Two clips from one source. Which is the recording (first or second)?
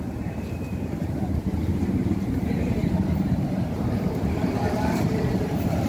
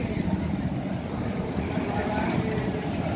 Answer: second